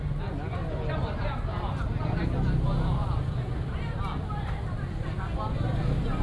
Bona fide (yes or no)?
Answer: yes